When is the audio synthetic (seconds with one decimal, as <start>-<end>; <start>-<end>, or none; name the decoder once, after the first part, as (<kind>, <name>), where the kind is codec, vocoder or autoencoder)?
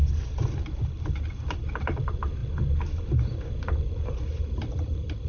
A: none